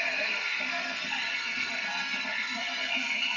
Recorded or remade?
remade